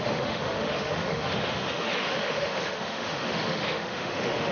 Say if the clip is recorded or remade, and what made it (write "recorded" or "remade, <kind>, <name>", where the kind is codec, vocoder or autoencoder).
remade, autoencoder, DAC-VAE